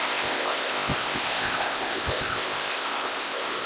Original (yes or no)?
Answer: no